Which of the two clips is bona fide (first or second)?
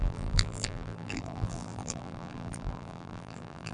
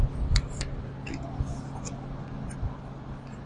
second